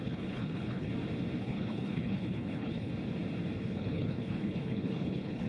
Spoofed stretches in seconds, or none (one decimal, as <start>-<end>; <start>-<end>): 0.0-0.9; 1.4-2.9; 3.6-5.5